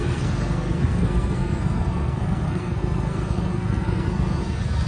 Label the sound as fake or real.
fake